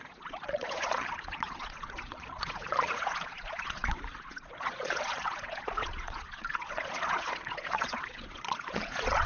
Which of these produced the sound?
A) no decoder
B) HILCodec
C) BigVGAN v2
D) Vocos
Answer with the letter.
D